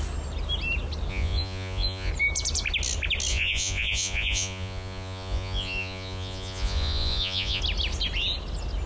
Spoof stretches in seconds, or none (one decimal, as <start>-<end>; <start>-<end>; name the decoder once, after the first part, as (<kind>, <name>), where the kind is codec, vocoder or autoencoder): 1.1-2.1 (vocoder, Vocos); 3.3-7.6